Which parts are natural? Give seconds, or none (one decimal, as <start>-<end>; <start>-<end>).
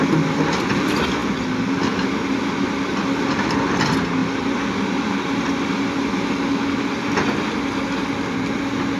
0.0-9.0